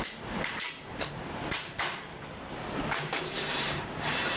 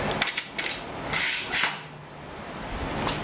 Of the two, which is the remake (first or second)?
first